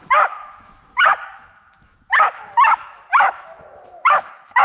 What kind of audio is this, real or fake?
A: fake